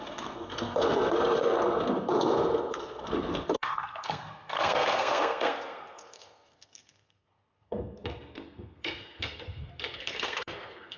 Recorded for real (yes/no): no